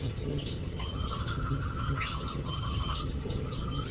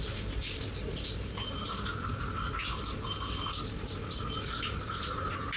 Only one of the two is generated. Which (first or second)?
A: first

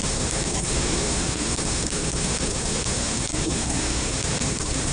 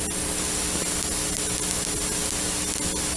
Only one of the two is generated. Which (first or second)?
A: first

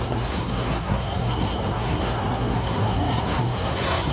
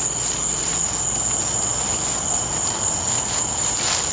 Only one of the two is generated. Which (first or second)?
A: first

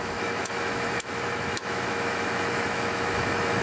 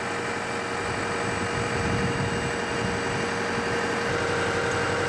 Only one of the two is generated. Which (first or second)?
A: first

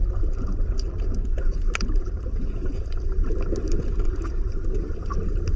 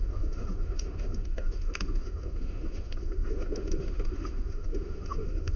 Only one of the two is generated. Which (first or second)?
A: second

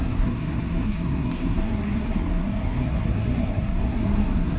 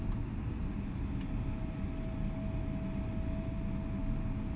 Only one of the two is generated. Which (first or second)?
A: first